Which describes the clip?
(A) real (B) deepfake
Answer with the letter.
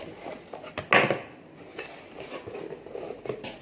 A